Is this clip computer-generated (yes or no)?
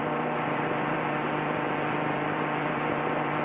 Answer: yes